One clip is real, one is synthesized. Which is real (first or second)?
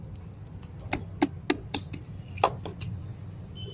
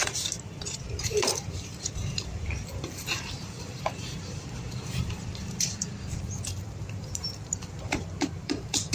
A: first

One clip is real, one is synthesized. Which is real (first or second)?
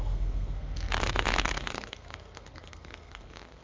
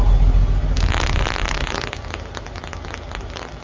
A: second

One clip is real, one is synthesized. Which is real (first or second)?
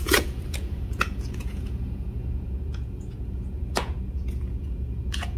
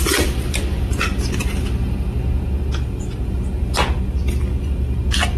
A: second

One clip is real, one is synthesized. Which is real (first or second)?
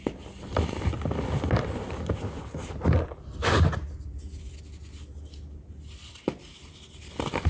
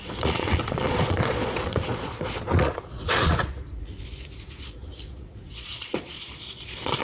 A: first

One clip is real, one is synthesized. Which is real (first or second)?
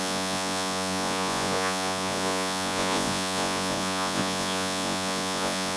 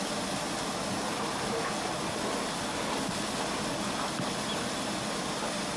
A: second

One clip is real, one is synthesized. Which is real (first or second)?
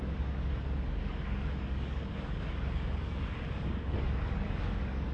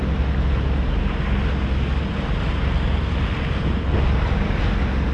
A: second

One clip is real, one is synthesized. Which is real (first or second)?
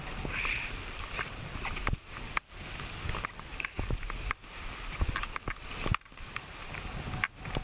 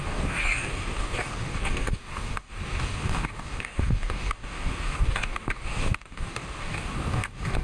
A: first